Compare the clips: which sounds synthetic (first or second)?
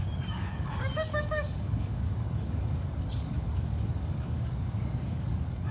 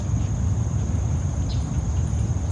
first